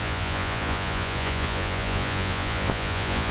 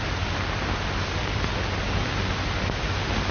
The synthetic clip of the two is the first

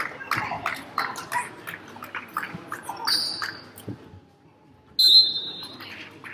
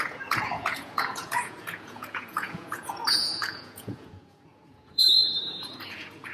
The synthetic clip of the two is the second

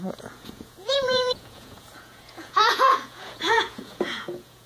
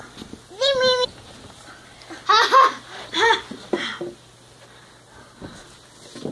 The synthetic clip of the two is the first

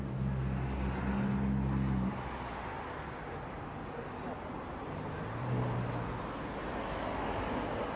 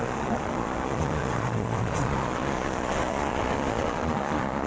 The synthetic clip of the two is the second